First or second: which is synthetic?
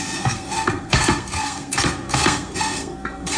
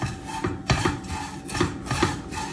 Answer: first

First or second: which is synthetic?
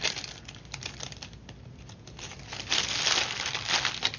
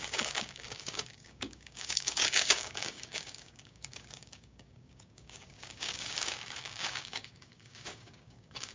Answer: second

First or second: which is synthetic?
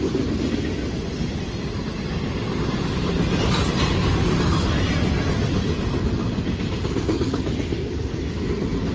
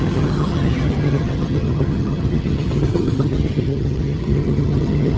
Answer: second